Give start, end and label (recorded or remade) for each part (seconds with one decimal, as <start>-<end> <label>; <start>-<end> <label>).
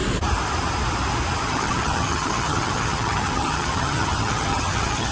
0.0-1.5 recorded; 1.5-5.1 remade